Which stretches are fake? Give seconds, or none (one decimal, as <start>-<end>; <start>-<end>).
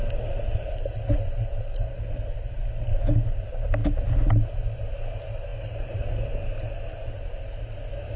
none